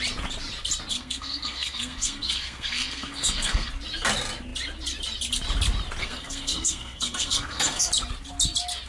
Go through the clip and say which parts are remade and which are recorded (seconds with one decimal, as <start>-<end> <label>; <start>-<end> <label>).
0.0-0.9 recorded; 0.9-3.7 remade; 3.7-6.0 recorded; 6.0-7.9 remade; 7.9-8.9 recorded